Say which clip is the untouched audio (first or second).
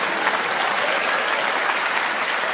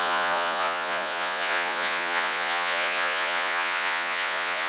first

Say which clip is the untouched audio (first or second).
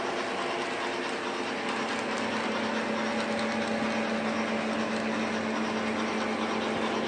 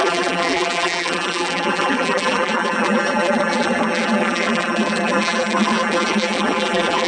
first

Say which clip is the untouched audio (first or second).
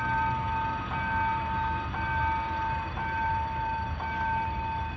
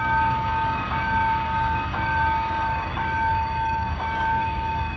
first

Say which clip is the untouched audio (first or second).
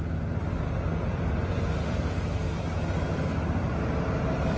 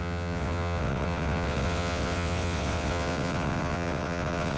first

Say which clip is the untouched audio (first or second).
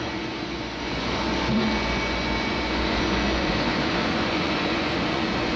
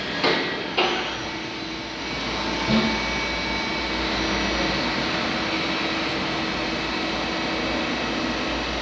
second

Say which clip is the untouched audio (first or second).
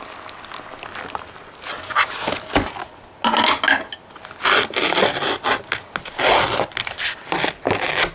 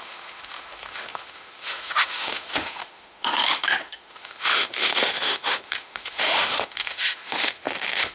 first